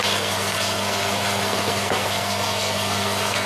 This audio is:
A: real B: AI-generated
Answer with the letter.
B